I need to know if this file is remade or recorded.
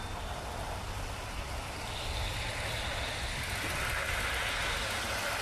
recorded